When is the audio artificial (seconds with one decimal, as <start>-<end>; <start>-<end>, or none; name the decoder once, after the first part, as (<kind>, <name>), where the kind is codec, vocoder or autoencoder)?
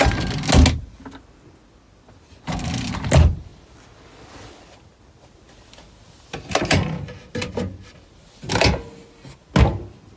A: none